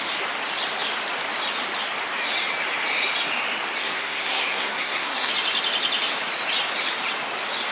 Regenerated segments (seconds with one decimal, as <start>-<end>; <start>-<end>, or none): 3.8-5.3